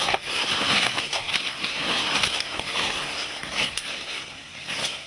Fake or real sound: fake